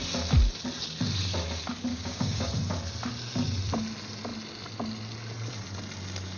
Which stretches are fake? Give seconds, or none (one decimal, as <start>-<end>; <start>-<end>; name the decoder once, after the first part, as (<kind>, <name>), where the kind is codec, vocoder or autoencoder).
1.9-2.5 (codec, DAC)